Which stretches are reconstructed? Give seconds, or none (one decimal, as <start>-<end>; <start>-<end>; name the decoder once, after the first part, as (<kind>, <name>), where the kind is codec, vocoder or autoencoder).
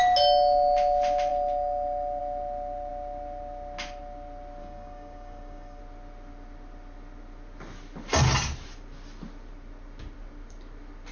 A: 4.6-5.8 (codec, DAC)